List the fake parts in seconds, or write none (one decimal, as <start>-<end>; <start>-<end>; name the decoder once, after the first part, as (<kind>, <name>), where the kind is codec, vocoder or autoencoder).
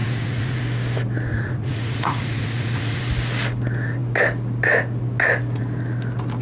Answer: 0.0-0.6 (vocoder, Vocos); 1.3-3.0